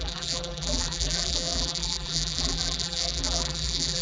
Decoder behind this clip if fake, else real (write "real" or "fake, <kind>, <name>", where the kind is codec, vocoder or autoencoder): fake, vocoder, BigVGAN v2